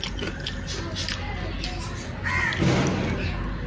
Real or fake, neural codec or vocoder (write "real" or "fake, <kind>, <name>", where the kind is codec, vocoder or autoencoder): real